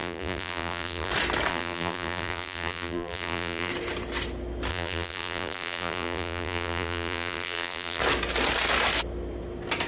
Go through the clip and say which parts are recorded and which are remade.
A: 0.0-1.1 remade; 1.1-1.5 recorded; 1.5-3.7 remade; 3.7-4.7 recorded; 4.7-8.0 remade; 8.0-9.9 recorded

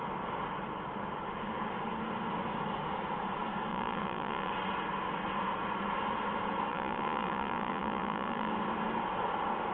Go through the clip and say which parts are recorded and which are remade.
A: 0.0-3.7 recorded; 3.7-4.5 remade; 4.5-6.7 recorded; 6.7-8.5 remade; 8.5-9.7 recorded

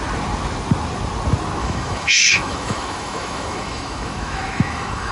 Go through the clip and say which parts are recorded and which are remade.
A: 0.0-1.6 recorded; 1.6-5.1 remade

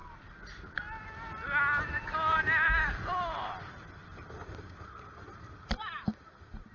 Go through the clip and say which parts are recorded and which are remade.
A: 0.0-1.9 recorded; 1.9-6.7 remade

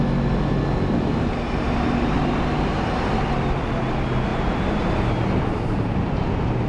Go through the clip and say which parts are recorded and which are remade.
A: 0.0-6.7 recorded